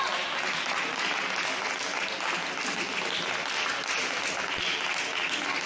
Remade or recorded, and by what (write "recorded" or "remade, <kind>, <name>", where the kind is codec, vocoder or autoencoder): recorded